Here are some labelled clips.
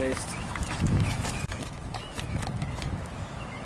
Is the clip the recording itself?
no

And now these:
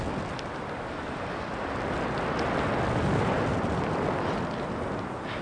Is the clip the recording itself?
yes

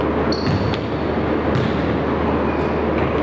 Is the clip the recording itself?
yes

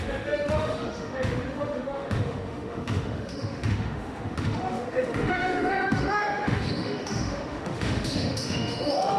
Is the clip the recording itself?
no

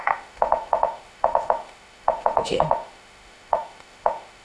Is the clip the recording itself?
no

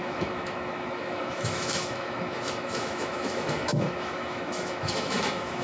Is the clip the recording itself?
no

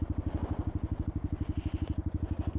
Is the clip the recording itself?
yes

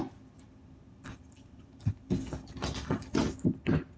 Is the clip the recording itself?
yes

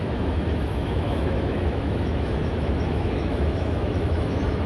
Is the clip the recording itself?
no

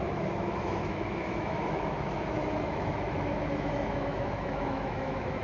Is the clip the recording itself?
no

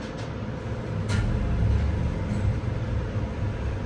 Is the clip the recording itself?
yes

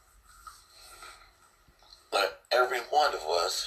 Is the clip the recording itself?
yes